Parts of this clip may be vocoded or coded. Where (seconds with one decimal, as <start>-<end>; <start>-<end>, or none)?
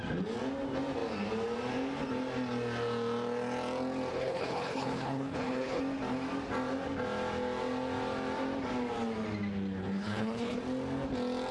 4.1-5.8; 9.8-10.6